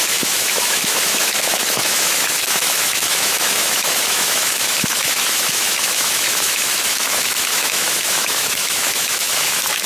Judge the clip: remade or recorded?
remade